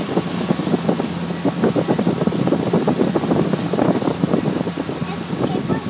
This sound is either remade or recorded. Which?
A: recorded